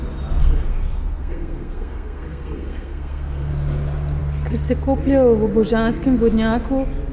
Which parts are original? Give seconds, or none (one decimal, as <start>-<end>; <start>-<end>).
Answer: 0.0-0.4; 3.5-7.1